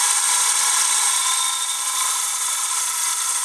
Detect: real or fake fake